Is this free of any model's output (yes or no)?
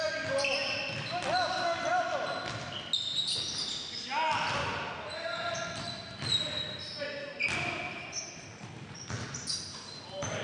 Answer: yes